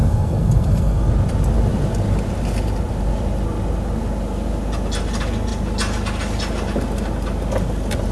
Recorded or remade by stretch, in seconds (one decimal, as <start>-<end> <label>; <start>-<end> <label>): 0.0-1.1 remade; 1.1-8.1 recorded